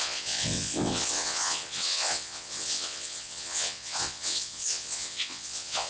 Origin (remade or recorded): remade